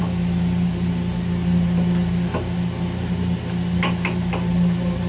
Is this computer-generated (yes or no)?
no